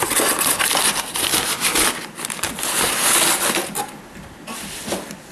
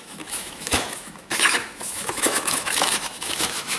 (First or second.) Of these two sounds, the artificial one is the second